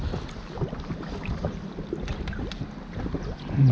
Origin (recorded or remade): recorded